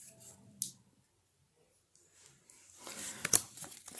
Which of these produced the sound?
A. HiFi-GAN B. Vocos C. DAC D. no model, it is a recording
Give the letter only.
D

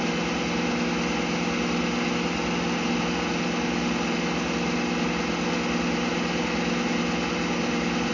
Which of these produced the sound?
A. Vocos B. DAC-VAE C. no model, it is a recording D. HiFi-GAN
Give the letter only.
C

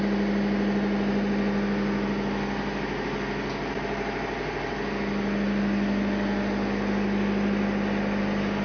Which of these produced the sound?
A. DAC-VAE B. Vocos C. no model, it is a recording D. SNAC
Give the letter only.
C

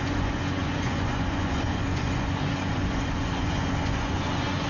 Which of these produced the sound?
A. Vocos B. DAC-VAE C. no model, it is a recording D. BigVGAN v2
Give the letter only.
A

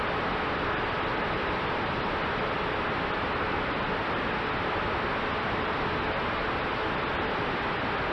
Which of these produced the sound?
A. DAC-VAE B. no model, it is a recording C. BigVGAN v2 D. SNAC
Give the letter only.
B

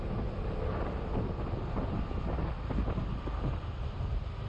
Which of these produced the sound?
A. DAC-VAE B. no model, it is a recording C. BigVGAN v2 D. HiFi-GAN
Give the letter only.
B